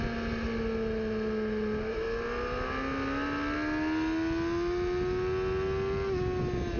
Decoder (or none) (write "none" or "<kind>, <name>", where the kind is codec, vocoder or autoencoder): none